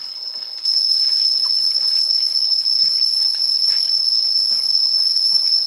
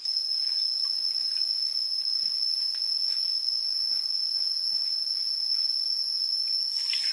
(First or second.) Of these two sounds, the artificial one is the first